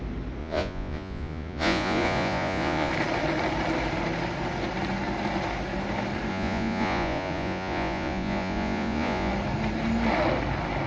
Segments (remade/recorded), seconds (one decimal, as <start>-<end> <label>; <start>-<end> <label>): 0.0-0.4 recorded; 0.4-2.9 remade; 2.9-6.3 recorded; 6.3-9.3 remade; 9.3-10.9 recorded